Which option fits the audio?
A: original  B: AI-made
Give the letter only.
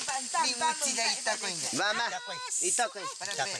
A